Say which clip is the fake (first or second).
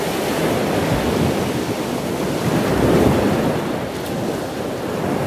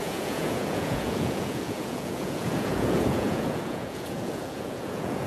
second